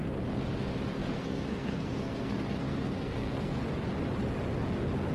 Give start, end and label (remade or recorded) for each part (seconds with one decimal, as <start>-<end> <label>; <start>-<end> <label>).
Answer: 0.0-1.0 recorded; 1.0-3.5 remade; 3.5-5.1 recorded